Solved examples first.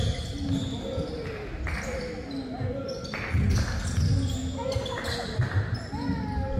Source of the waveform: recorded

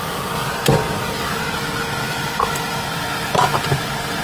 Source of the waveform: recorded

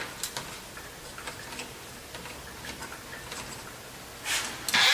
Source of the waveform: recorded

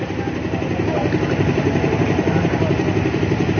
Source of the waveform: recorded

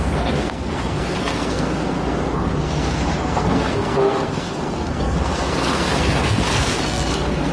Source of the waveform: remade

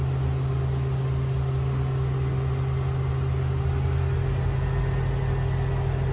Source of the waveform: recorded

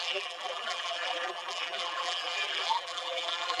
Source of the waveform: remade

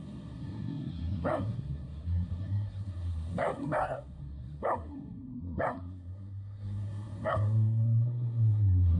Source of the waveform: remade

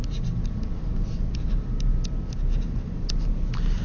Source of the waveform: recorded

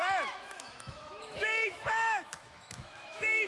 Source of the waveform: remade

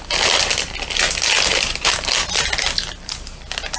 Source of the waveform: recorded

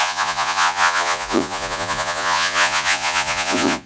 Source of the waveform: remade